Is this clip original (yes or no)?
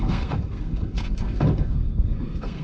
no